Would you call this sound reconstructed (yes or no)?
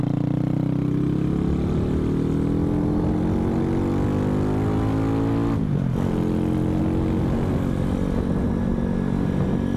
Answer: no